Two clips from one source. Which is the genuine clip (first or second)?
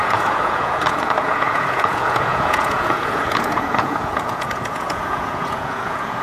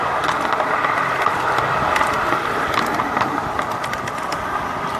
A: second